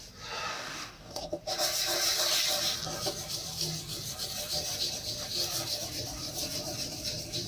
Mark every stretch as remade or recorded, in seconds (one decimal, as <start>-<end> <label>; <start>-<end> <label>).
0.0-0.5 recorded; 0.5-1.4 remade; 1.4-7.5 recorded